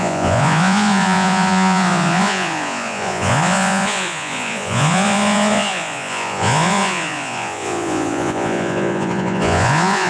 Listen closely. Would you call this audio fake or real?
fake